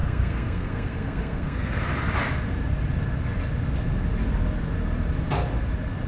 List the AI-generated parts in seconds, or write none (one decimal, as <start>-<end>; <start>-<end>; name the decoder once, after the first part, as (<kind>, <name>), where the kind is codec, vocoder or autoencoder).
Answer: 0.0-1.9 (codec, SNAC)